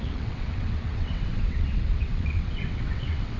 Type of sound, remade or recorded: remade